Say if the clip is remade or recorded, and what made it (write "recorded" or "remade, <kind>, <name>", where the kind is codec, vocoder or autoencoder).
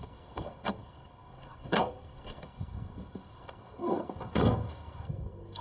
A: remade, codec, SNAC